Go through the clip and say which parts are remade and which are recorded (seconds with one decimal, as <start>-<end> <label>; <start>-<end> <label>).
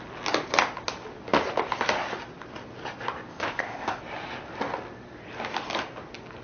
0.0-3.3 recorded; 3.3-4.0 remade; 4.0-6.4 recorded